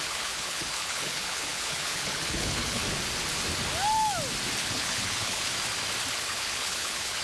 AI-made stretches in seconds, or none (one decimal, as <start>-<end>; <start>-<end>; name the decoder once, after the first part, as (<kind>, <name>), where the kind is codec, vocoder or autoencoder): 0.0-2.8 (codec, HILCodec); 4.6-5.5; 6.1-7.2